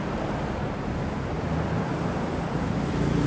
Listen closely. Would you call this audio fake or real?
real